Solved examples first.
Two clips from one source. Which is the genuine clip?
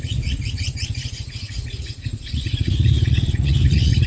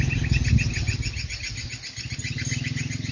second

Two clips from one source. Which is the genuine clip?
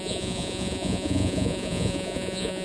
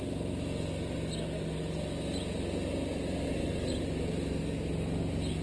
second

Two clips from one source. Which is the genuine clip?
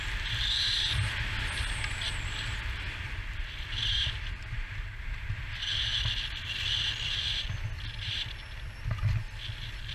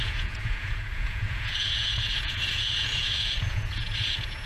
first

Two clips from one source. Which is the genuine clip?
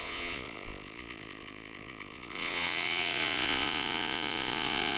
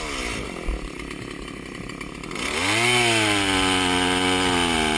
second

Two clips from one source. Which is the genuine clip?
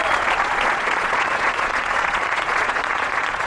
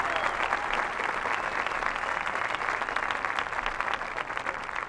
second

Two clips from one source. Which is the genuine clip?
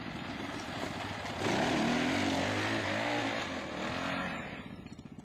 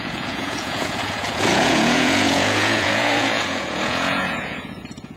first